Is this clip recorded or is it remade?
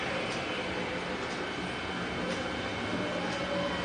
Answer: recorded